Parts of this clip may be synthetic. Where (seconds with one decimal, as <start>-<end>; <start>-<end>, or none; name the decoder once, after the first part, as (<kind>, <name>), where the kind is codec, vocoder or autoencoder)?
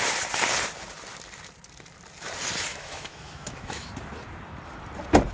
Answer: 2.7-3.9 (autoencoder, DAC-VAE)